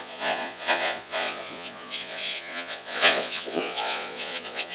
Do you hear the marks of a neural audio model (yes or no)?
yes